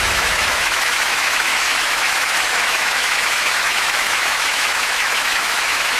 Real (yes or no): no